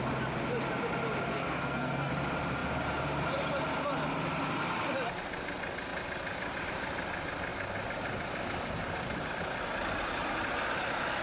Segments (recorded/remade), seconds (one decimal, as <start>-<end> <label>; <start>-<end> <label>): 0.0-1.3 recorded; 1.3-2.1 remade; 2.1-11.2 recorded